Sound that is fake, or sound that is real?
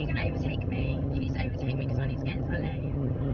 fake